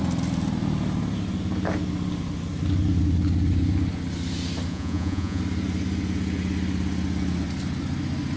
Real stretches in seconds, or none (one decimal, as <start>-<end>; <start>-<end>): 0.0-4.7; 5.4-8.4